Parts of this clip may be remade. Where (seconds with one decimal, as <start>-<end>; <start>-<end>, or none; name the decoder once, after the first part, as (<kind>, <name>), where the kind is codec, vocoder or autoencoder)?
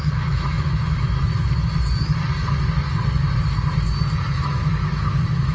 0.0-1.3 (autoencoder, DAC-VAE); 4.3-5.5